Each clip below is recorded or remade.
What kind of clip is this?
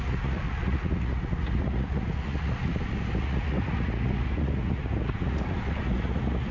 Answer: remade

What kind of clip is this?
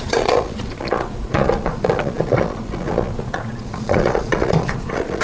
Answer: remade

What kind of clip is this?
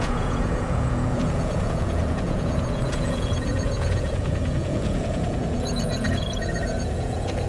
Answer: remade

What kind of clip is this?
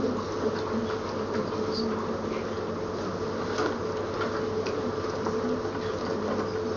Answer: recorded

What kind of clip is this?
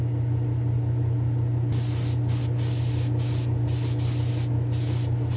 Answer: recorded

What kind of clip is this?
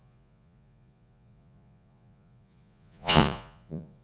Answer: remade